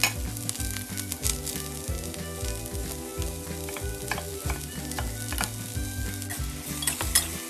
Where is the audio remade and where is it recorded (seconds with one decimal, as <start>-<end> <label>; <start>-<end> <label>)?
0.0-7.5 recorded